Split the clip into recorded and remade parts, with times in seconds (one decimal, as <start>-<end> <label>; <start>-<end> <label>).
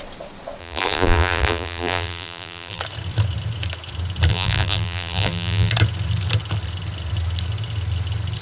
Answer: 0.0-0.6 recorded; 0.6-2.8 remade; 2.8-4.3 recorded; 4.3-5.7 remade; 5.7-8.4 recorded